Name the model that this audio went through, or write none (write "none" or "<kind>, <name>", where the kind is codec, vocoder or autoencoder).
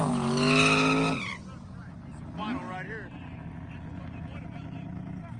none